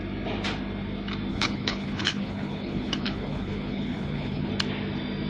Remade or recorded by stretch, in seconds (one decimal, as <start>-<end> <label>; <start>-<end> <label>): 0.0-1.3 recorded; 1.3-4.5 remade; 4.5-5.3 recorded